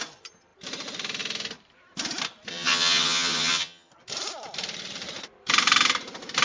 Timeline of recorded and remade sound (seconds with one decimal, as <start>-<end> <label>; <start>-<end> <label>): 0.0-2.5 recorded; 2.5-3.9 remade; 3.9-6.4 recorded